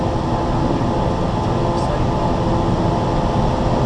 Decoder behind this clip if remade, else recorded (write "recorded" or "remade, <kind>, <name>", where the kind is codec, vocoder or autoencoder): recorded